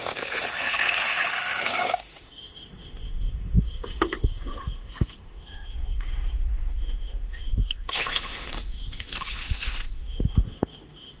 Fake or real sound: fake